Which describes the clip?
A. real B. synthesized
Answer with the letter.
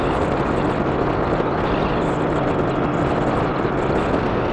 A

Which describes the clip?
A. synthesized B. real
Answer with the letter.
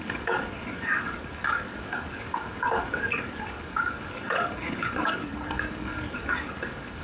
A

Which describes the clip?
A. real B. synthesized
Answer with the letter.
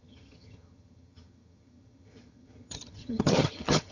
B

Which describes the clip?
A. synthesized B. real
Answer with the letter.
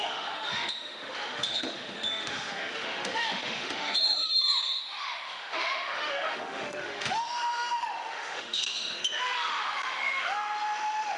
A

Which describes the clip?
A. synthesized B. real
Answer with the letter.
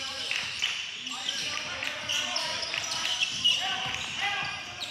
A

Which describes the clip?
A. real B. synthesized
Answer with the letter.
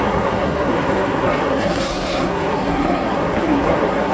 B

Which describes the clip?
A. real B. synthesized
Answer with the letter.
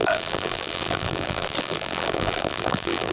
B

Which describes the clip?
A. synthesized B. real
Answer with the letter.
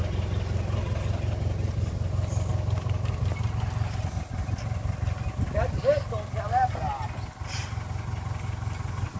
B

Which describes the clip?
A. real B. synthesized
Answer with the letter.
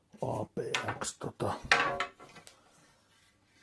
A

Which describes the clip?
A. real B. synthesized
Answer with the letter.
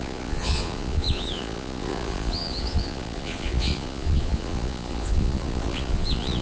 B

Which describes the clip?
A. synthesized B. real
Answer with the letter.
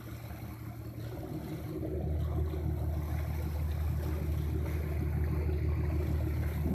B